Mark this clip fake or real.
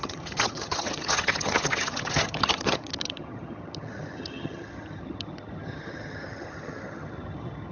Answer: fake